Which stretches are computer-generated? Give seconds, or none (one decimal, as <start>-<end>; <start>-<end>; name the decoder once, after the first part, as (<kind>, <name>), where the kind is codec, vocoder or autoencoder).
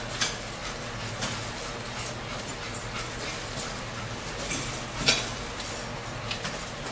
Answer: none